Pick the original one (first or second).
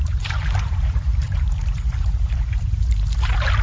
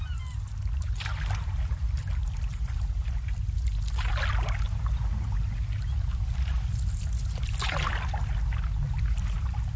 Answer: second